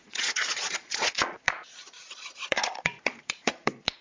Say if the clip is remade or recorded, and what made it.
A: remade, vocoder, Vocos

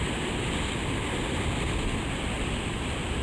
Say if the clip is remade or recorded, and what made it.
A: recorded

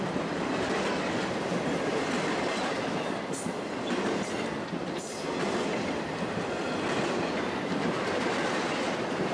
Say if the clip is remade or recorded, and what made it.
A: remade, vocoder, BigVGAN v2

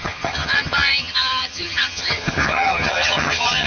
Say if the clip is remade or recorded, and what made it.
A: remade, vocoder, HiFi-GAN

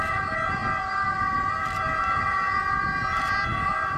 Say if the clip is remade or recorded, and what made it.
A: recorded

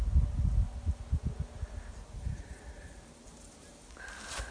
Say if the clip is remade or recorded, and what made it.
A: recorded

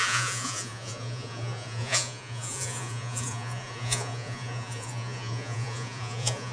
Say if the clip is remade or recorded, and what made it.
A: remade, vocoder, Vocos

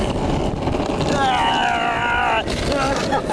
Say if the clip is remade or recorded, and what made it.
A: recorded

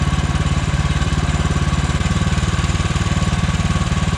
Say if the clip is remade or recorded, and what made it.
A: remade, vocoder, BigVGAN v2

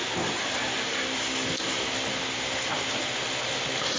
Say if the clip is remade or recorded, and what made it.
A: recorded